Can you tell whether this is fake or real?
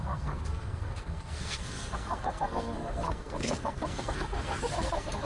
fake